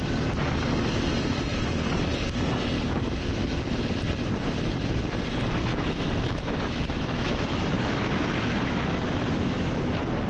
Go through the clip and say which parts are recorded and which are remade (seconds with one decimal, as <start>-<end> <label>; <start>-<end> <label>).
0.0-5.7 recorded; 5.7-9.9 remade; 9.9-10.3 recorded